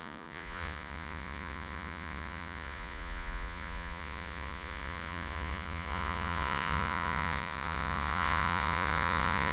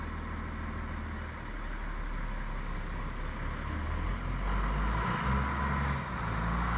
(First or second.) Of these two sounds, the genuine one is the second